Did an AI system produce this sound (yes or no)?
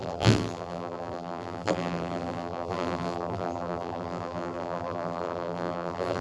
yes